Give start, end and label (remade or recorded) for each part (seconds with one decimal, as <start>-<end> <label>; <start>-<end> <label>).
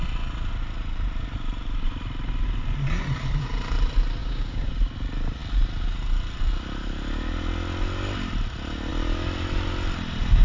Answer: 0.0-4.2 recorded; 4.2-4.7 remade; 4.7-10.4 recorded